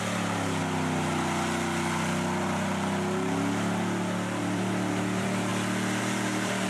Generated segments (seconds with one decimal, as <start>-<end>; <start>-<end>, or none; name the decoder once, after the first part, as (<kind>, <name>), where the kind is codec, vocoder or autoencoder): 0.0-0.6 (vocoder, BigVGAN v2); 4.4-5.5; 6.0-6.7